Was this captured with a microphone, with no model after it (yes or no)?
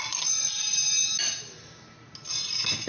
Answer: yes